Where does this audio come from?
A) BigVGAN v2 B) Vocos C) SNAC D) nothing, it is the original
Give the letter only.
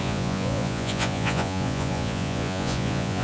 B